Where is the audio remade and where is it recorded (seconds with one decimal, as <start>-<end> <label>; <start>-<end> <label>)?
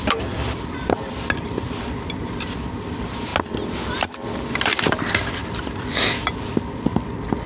0.0-3.3 remade; 3.3-4.0 recorded; 4.0-7.5 remade